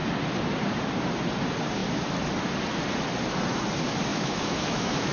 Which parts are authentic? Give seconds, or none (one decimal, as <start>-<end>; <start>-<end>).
0.0-4.1